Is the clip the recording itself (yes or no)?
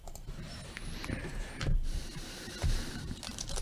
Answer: no